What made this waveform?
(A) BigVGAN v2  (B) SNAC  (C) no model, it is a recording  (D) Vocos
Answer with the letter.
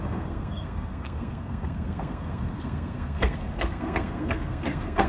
B